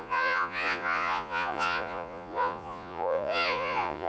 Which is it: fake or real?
fake